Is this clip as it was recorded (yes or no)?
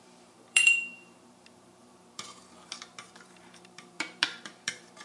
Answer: no